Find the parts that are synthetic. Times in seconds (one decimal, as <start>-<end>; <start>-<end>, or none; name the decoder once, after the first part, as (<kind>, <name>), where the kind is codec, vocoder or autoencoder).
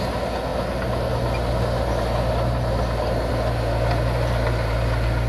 none